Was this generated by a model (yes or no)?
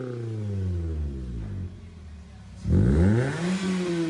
no